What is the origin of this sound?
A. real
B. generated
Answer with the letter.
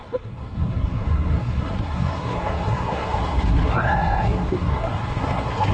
B